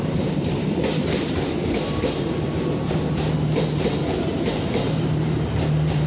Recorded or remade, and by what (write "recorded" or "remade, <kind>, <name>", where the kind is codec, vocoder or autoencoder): remade, vocoder, BigVGAN v2